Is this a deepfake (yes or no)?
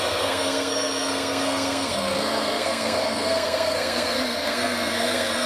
yes